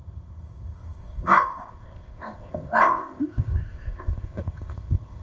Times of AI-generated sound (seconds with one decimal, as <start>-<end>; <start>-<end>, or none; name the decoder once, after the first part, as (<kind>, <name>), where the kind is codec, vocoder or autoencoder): 0.0-5.2 (codec, ZipCodec)